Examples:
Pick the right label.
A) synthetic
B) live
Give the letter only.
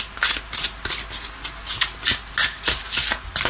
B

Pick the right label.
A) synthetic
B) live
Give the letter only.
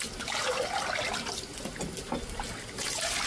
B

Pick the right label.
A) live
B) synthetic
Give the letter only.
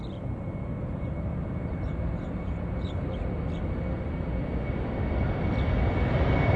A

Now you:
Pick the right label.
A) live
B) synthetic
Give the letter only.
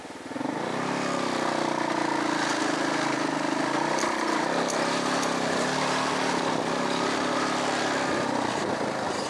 A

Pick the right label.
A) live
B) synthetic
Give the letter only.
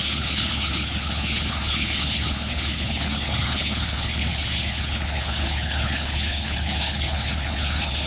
B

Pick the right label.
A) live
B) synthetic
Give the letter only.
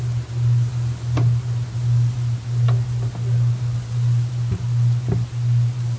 A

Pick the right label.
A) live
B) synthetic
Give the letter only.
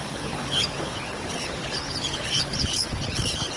B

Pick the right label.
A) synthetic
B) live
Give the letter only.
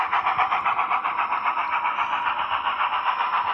B